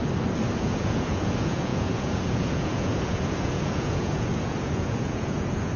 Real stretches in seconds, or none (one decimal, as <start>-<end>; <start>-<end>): 0.0-0.6